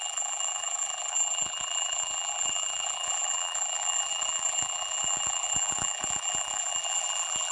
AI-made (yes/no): yes